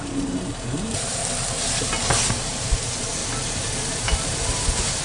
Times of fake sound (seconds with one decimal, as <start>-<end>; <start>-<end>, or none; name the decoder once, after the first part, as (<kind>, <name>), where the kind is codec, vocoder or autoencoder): 0.0-1.2 (vocoder, BigVGAN v2); 2.3-3.2; 3.8-5.0

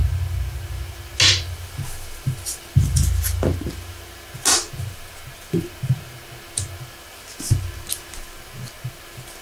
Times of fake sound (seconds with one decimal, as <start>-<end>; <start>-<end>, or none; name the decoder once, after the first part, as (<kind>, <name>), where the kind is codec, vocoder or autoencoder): none

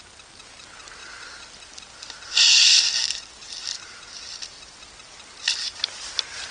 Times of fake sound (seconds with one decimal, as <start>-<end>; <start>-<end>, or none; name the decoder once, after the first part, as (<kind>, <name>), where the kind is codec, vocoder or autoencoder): 1.0-4.9 (vocoder, BigVGAN v2)

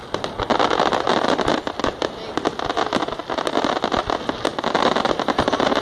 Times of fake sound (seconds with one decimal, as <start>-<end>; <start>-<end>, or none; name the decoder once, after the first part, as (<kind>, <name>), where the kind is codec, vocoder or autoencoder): none

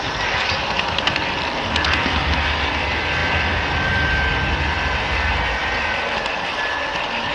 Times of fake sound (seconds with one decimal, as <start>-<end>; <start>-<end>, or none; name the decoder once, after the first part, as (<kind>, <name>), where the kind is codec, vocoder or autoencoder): none

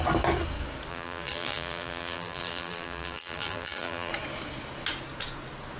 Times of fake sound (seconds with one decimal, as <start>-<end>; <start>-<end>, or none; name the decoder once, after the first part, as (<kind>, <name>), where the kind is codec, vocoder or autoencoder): 0.9-4.1 (vocoder, BigVGAN v2)

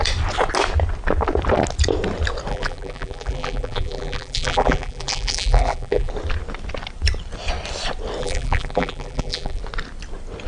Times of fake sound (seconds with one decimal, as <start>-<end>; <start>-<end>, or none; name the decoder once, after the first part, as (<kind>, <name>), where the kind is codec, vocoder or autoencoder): 2.5-6.1 (vocoder, BigVGAN v2); 8.2-9.6

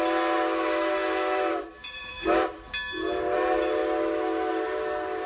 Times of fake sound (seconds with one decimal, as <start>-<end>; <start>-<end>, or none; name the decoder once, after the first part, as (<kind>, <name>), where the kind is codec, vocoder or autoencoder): 1.5-2.7 (vocoder, BigVGAN v2)